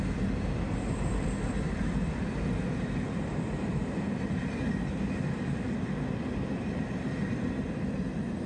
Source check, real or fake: real